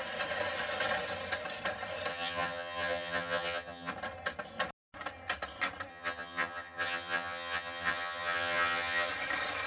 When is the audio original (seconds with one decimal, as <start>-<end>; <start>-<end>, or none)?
0.0-2.1; 3.9-5.9; 9.1-9.7